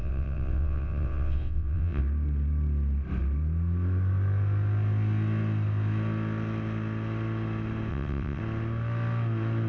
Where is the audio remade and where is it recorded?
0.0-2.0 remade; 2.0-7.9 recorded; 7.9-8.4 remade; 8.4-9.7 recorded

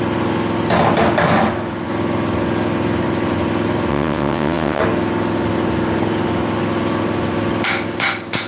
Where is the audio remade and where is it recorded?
0.0-3.9 recorded; 3.9-4.8 remade; 4.8-8.5 recorded

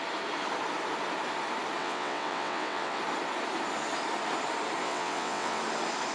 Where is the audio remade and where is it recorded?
0.0-1.8 recorded; 1.8-3.0 remade; 3.0-4.8 recorded; 4.8-5.6 remade; 5.6-6.1 recorded